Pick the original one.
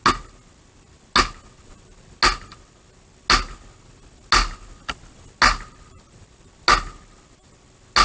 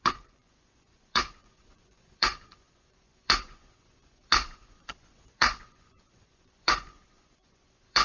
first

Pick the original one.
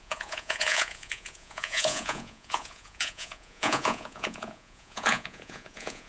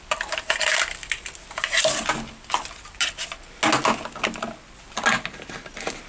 second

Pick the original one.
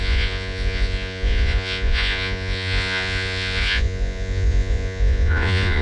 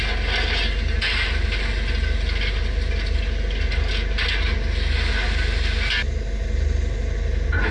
second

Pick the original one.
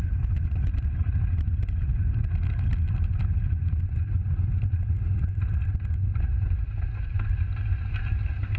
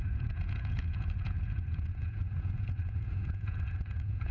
first